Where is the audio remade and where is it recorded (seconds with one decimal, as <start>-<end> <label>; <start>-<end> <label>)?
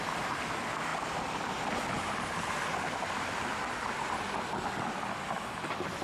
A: 0.0-0.9 remade; 0.9-4.5 recorded; 4.5-6.0 remade